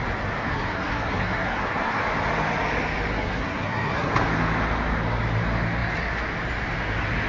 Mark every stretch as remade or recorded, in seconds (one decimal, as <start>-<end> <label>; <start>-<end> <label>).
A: 0.0-0.4 recorded; 0.4-2.0 remade; 2.0-3.1 recorded; 3.1-4.1 remade; 4.1-7.3 recorded